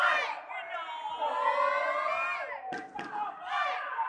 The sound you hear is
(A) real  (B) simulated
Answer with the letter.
A